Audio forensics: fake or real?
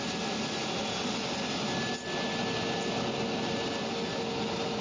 real